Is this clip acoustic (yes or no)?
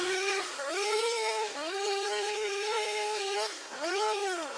no